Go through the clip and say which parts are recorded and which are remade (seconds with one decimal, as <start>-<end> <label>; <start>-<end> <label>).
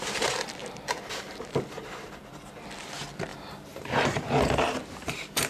0.0-0.6 recorded; 0.6-2.6 remade; 2.6-3.3 recorded; 3.3-5.5 remade